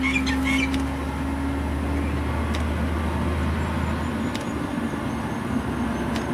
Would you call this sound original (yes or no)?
yes